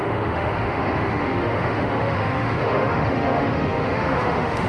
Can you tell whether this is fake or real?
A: fake